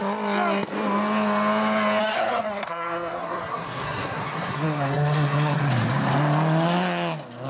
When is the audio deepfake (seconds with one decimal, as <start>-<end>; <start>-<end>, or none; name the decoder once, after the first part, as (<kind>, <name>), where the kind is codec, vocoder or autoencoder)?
2.0-5.7 (codec, SNAC)